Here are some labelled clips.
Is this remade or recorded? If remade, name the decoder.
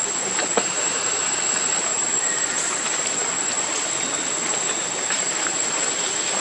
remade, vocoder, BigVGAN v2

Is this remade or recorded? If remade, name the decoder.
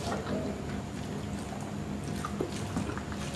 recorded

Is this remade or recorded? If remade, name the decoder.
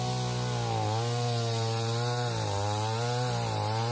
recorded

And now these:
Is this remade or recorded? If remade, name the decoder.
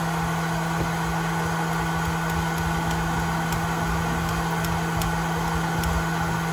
recorded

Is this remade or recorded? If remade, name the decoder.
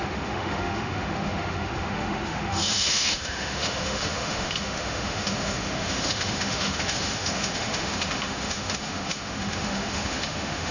remade, autoencoder, DAC-VAE